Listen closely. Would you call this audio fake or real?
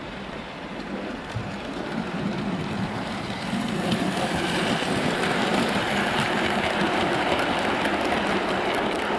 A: fake